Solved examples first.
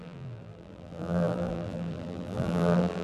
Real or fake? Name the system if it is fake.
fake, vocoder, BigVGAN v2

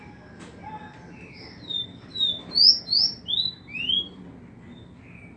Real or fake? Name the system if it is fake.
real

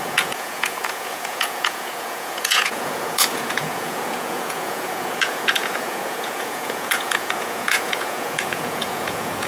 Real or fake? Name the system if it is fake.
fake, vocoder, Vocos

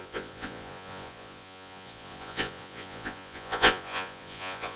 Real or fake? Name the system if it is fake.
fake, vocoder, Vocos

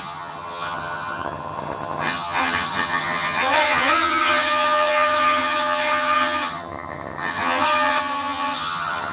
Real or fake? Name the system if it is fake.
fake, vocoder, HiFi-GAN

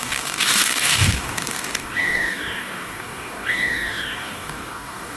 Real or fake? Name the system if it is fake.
fake, codec, DAC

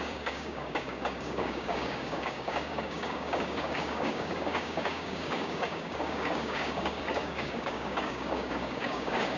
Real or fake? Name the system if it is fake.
fake, codec, DAC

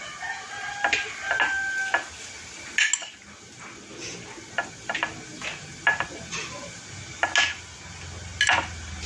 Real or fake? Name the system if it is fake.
real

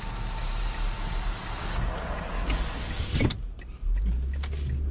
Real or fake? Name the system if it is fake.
real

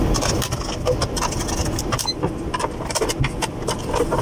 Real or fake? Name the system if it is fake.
fake, vocoder, BigVGAN v2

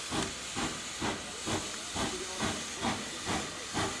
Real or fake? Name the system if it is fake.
real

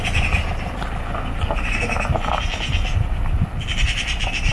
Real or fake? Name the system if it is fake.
real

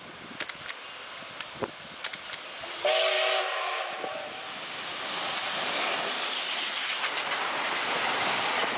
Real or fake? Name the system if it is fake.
real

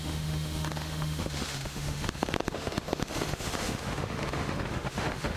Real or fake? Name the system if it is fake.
fake, autoencoder, DAC-VAE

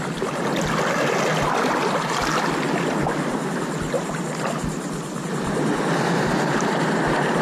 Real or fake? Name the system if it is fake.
real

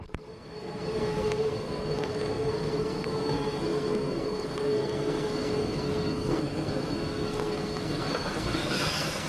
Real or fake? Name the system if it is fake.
fake, codec, SNAC